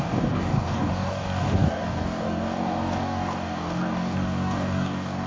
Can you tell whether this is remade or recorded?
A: remade